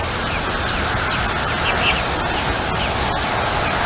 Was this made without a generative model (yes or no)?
yes